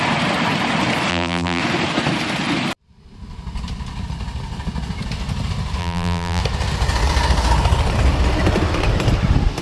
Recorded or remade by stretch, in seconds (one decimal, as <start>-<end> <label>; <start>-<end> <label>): 0.0-1.1 recorded; 1.1-1.6 remade; 1.6-5.8 recorded; 5.8-6.4 remade; 6.4-9.6 recorded